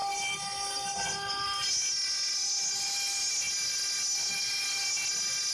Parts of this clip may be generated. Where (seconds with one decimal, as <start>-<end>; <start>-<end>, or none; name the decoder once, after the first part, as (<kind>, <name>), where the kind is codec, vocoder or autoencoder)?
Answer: none